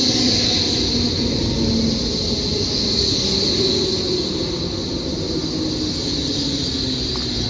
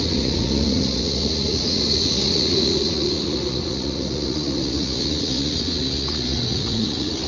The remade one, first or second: second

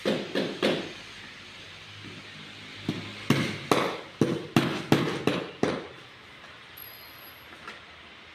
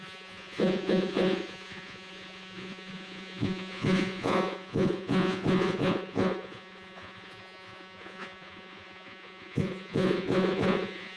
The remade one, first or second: second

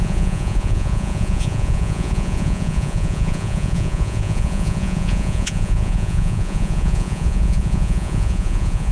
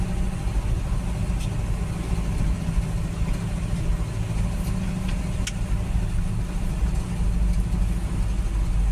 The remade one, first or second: first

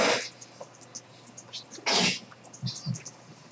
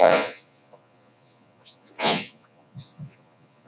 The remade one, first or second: second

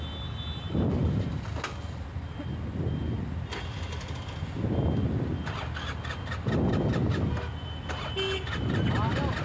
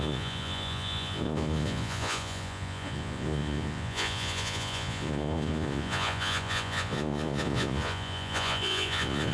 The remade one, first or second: second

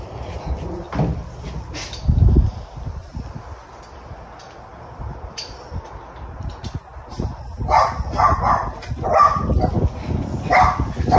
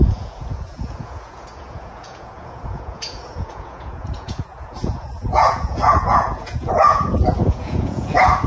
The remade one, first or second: second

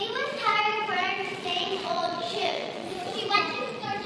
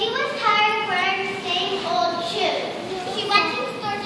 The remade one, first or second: first